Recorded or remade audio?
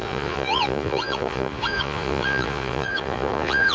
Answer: remade